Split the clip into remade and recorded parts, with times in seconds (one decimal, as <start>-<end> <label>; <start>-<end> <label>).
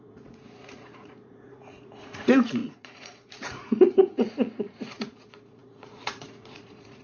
0.0-7.0 remade